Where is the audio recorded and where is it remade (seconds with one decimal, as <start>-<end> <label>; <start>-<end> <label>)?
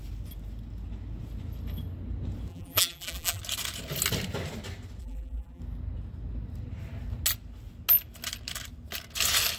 0.0-2.5 recorded; 2.5-3.4 remade; 3.4-5.0 recorded; 5.0-5.6 remade; 5.6-9.6 recorded